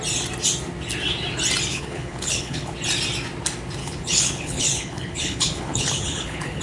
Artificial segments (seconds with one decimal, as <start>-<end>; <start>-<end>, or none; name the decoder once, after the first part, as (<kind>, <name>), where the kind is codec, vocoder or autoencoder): 1.7-2.7 (codec, HILCodec); 3.8-6.6